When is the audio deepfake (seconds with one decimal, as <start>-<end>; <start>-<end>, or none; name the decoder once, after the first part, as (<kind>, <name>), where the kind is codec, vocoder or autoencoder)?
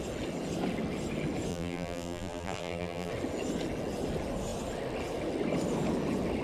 1.5-3.1 (vocoder, BigVGAN v2)